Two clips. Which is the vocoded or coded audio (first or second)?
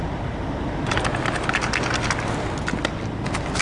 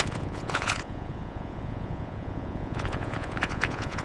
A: second